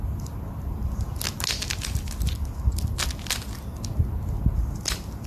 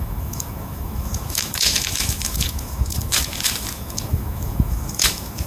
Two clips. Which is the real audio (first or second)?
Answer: first